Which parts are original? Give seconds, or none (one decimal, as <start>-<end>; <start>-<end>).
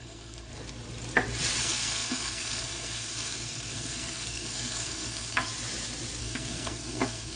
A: 0.5-1.6; 5.5-6.2